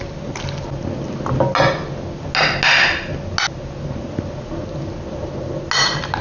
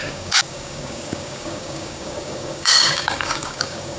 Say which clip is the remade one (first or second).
second